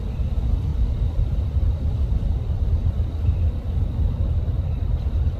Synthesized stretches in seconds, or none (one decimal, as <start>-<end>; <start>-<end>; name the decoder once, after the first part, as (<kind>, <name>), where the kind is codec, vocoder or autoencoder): none

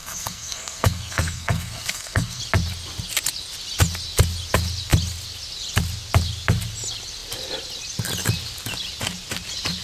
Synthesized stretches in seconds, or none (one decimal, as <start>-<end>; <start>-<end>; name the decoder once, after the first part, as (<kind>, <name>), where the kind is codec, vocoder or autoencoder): 0.0-2.4 (codec, SNAC)

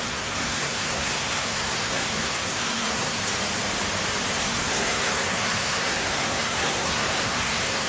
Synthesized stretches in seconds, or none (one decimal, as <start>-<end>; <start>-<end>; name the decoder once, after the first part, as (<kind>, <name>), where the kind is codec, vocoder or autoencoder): 0.0-3.2 (codec, SNAC); 4.3-7.9

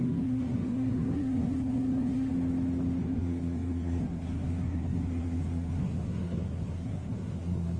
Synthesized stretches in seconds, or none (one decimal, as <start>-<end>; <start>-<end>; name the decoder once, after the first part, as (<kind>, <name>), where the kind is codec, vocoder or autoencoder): 0.0-2.3 (codec, SNAC); 3.0-7.8

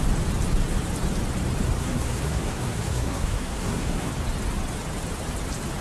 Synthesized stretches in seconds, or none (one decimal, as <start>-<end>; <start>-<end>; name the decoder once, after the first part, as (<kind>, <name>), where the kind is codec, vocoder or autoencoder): 1.8-4.1 (codec, SNAC)